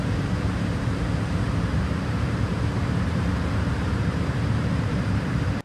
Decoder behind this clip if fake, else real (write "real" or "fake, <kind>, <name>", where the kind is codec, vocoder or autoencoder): fake, vocoder, BigVGAN v2